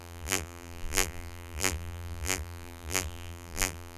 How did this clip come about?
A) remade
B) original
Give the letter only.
A